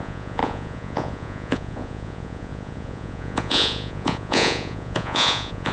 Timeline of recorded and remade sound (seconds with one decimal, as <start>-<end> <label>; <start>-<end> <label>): 0.0-5.7 remade